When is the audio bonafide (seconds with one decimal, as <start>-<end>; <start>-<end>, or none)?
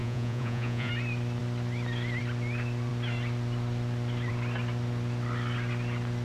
0.9-6.2